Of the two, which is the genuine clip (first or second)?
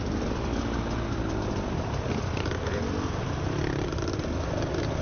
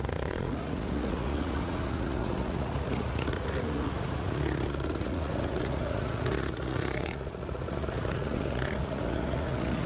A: first